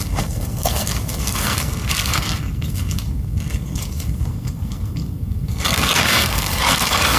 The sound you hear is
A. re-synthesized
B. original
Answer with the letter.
A